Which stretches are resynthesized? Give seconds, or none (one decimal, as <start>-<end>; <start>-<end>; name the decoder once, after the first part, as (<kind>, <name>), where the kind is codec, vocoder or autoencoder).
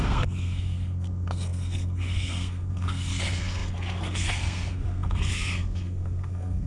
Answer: 0.0-6.7 (codec, SNAC)